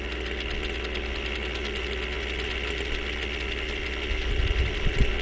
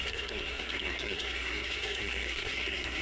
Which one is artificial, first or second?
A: second